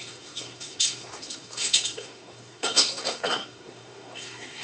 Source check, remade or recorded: remade